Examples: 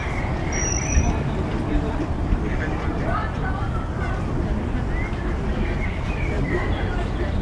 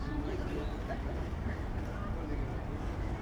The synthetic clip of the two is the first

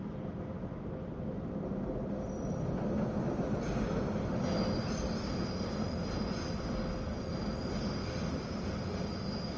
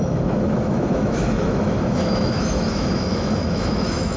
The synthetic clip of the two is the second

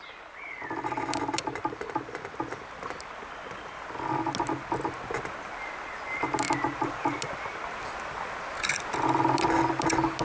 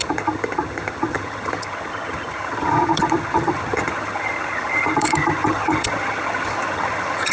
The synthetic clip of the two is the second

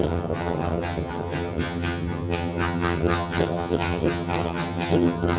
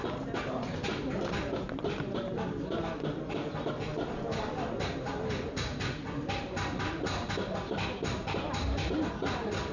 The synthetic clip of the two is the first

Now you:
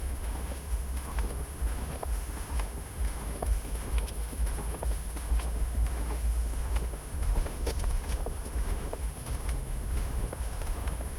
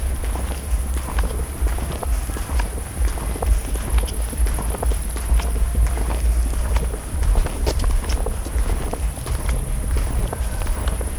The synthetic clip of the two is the first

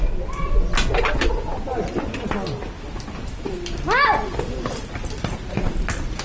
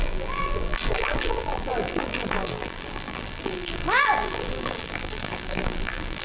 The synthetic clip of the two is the second